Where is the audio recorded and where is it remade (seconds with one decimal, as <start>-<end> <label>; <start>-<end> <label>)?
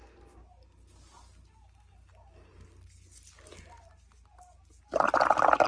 0.0-5.7 recorded